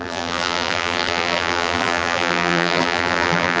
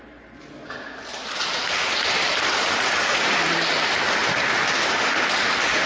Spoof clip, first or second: first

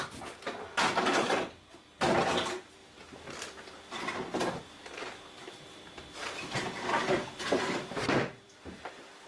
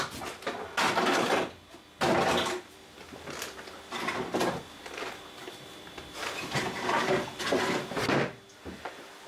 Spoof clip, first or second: first